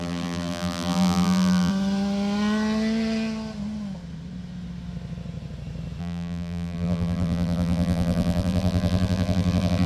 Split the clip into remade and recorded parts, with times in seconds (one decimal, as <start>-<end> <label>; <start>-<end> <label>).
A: 0.0-1.7 remade; 1.7-6.0 recorded; 6.0-9.9 remade